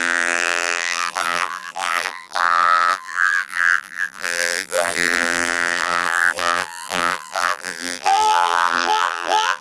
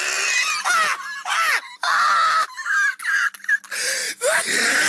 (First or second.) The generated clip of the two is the first